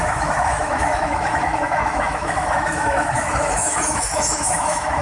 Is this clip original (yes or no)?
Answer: no